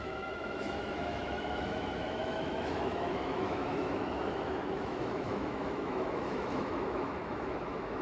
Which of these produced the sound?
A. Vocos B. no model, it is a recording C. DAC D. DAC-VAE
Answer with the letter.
D